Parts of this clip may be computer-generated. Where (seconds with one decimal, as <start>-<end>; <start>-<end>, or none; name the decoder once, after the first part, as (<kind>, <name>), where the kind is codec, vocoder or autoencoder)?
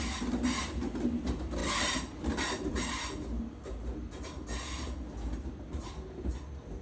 none